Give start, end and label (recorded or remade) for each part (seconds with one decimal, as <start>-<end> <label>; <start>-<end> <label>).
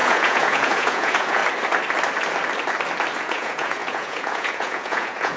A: 0.0-1.4 remade; 1.4-3.2 recorded; 3.2-5.4 remade